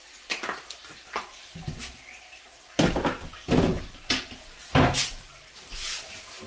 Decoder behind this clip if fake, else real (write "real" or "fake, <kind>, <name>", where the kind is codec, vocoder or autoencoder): real